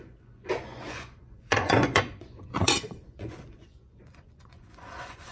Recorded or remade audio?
remade